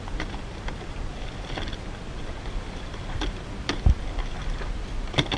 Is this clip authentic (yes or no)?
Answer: yes